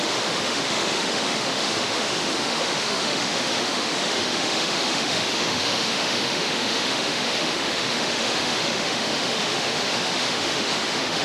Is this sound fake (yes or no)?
yes